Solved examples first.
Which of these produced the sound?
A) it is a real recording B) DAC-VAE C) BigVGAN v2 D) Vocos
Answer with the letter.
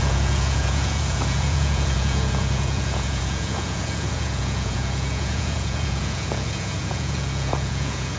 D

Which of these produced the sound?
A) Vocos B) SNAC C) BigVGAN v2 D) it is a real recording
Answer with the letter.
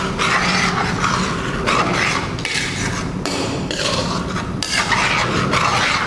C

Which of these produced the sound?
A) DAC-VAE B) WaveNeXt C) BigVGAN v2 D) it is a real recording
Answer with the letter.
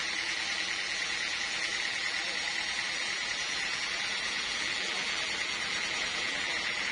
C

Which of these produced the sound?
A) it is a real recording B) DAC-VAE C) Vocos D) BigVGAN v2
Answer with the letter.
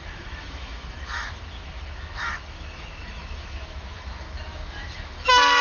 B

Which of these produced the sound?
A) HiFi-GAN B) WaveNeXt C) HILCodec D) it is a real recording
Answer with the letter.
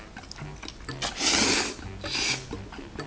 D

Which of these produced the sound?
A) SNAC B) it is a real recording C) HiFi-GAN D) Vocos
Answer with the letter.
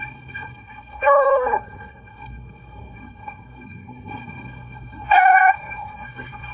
A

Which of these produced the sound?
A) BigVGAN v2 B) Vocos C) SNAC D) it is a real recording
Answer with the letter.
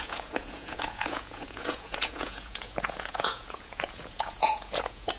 B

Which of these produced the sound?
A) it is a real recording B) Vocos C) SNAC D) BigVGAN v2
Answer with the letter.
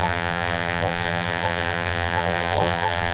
D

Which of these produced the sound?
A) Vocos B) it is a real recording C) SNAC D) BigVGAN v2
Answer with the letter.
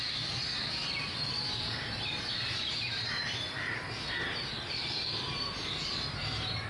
D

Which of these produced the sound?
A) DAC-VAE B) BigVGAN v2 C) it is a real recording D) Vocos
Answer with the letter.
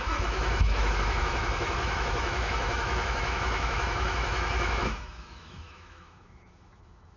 A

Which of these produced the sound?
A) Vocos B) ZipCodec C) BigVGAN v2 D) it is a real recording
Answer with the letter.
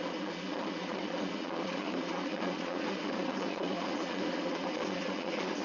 A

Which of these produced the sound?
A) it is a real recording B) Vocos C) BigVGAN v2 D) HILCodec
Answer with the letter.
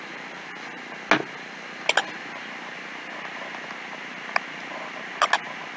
A